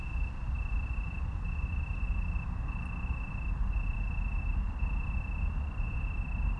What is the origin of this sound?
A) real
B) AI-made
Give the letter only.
A